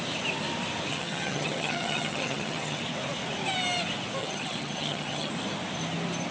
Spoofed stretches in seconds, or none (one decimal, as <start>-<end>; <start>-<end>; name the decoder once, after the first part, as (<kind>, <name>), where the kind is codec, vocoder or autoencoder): 0.9-2.8 (vocoder, HiFi-GAN); 4.2-5.3